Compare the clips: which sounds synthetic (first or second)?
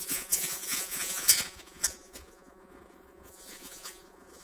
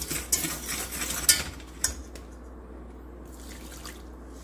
first